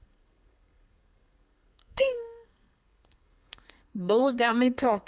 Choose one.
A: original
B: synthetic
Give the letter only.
B